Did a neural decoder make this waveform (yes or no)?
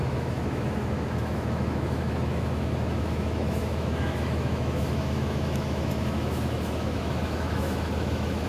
yes